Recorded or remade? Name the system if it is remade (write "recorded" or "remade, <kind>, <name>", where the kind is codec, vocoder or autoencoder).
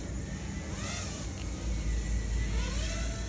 recorded